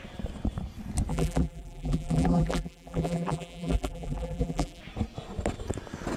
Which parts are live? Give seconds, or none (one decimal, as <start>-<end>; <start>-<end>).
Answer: 0.0-1.1; 4.8-6.2